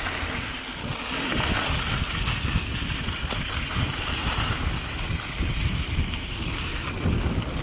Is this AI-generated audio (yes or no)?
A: no